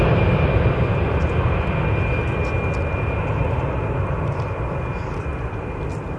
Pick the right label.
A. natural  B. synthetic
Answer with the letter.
A